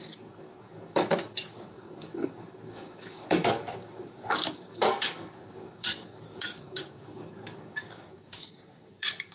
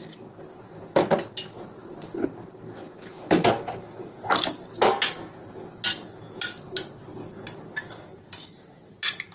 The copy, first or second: first